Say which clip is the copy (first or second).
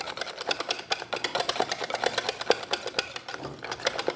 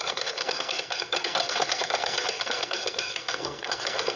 second